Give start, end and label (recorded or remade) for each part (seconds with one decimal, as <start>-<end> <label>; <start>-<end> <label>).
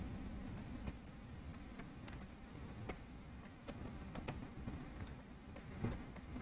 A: 0.0-6.4 recorded